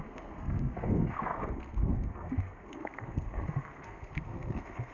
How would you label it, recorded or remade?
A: remade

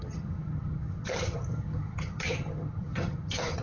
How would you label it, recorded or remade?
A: remade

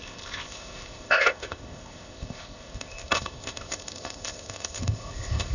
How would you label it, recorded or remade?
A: remade